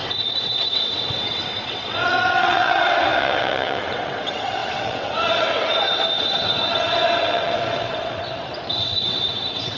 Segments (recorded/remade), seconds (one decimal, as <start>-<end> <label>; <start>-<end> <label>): 0.0-9.8 remade